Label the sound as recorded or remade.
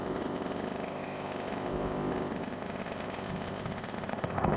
remade